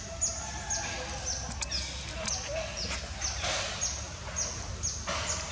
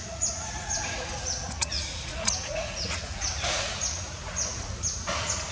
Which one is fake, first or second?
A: second